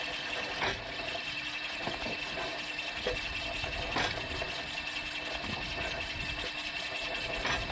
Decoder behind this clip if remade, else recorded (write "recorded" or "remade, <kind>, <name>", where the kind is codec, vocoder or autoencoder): recorded